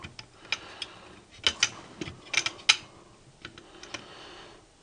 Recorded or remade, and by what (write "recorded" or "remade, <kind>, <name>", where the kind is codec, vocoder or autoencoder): recorded